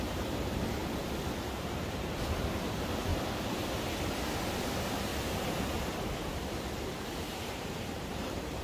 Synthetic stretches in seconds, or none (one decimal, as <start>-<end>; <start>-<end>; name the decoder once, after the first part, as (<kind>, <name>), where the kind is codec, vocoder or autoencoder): 0.0-0.8 (vocoder, BigVGAN v2); 2.7-3.1; 4.6-5.1; 7.2-8.6